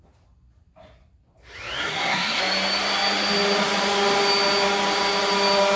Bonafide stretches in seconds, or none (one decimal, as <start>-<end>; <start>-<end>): 0.0-1.8; 2.4-5.8